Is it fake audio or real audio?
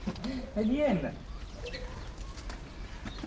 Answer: real